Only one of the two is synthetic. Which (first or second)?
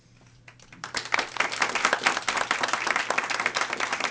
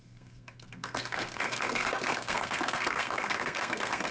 second